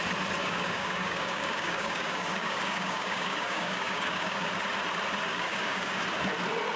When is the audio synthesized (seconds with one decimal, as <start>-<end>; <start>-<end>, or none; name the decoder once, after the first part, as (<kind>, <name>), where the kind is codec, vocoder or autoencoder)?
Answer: 0.4-4.5 (codec, DAC); 5.3-6.0